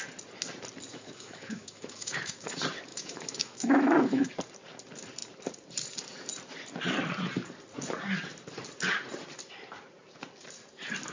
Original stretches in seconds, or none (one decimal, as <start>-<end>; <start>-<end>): 0.0-0.9; 2.5-2.9; 4.3-11.1